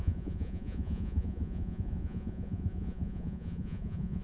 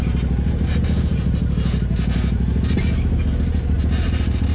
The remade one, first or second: first